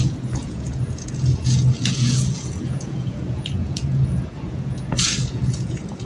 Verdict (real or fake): fake